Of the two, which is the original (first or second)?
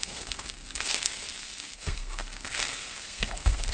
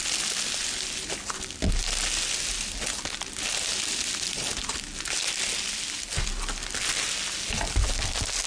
second